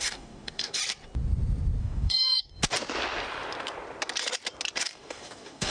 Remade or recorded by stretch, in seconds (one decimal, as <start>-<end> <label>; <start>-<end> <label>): 0.0-0.8 remade; 0.8-1.8 recorded; 1.8-2.5 remade; 2.5-4.8 recorded; 4.8-5.7 remade